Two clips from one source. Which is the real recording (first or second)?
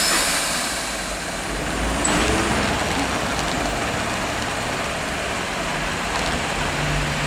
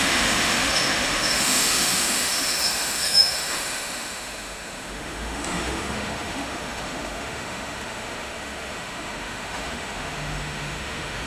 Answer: first